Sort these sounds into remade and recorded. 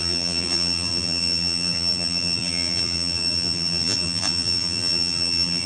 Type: remade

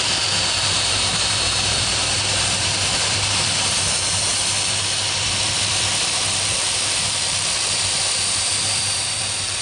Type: remade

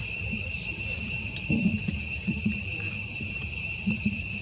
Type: remade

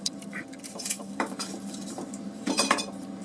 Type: remade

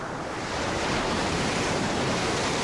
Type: remade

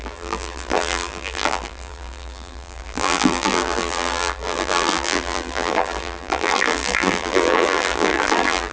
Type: remade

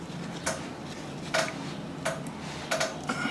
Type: recorded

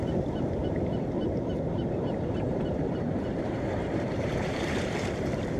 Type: remade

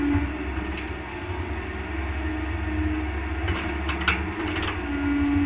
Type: recorded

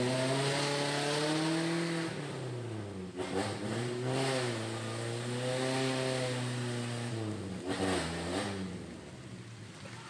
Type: recorded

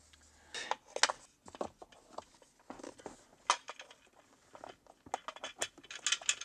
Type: recorded